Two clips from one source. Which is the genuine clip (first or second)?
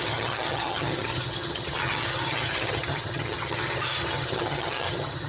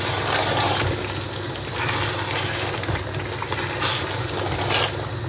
second